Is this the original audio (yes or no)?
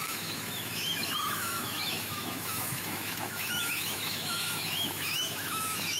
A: no